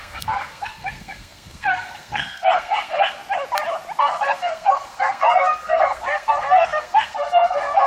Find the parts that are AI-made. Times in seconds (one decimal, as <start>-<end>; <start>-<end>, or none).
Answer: 0.0-3.2; 4.0-7.9